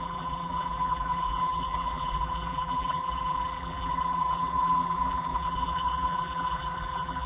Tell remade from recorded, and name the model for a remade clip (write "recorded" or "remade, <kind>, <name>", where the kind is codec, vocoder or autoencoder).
remade, vocoder, BigVGAN v2